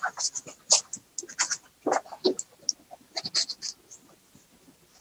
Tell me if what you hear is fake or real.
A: real